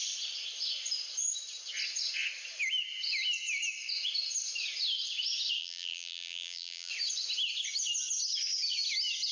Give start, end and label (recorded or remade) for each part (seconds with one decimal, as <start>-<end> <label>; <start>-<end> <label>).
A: 0.0-5.6 recorded; 5.6-6.9 remade; 6.9-9.3 recorded